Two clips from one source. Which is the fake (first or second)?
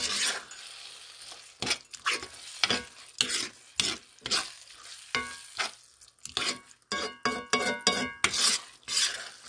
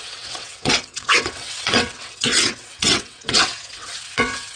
second